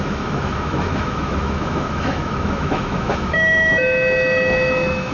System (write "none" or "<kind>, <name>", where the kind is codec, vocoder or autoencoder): autoencoder, DAC-VAE